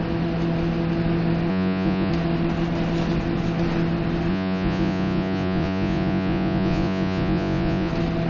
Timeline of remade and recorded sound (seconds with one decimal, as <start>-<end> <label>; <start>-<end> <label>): 0.0-1.5 recorded; 1.5-2.1 remade; 2.1-4.3 recorded; 4.3-7.9 remade; 7.9-8.3 recorded